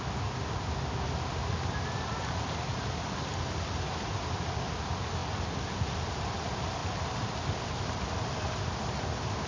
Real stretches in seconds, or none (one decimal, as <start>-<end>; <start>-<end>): 0.0-6.8; 7.8-9.5